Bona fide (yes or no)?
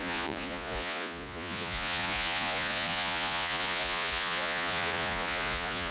no